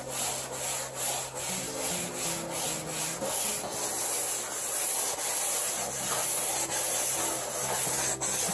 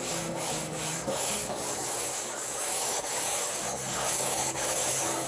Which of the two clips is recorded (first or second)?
first